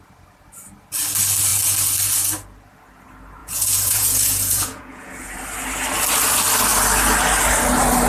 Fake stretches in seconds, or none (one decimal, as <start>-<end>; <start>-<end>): 3.4-5.4